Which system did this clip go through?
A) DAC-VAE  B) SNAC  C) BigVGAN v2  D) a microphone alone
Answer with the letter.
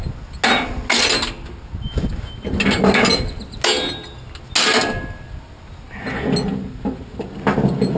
D